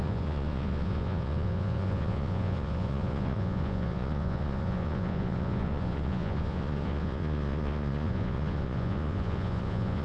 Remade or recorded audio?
remade